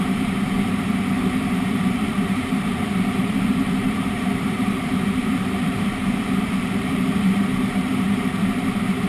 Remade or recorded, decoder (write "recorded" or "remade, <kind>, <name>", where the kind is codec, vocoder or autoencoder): remade, vocoder, BigVGAN v2